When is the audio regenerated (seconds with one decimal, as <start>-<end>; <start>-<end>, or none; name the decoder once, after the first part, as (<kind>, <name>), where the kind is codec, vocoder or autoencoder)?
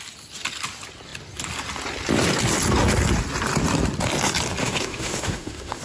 4.6-5.8 (autoencoder, DAC-VAE)